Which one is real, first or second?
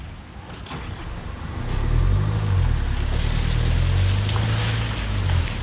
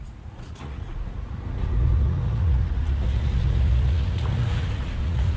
first